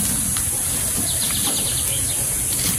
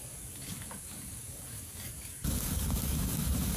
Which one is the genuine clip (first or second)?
first